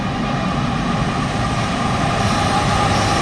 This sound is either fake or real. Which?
real